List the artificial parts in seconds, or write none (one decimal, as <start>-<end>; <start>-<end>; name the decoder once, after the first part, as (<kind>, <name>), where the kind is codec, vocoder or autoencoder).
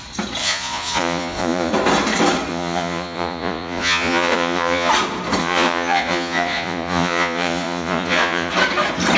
0.4-1.7 (vocoder, Vocos); 2.5-4.9; 5.4-8.5